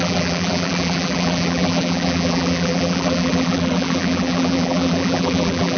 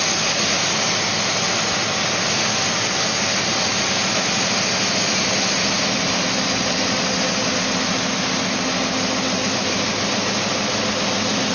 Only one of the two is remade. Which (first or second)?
first